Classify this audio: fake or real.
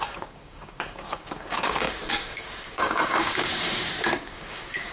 fake